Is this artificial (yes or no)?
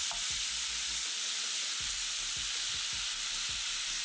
no